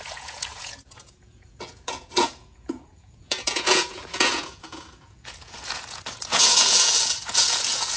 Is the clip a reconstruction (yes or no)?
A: yes